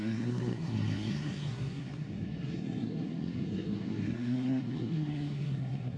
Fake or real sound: fake